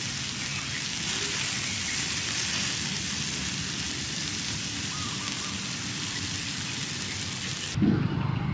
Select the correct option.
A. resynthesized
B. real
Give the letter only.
B